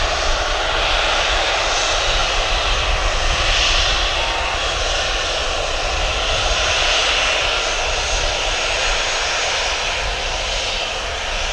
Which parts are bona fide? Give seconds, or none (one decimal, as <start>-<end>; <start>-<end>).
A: 0.0-11.5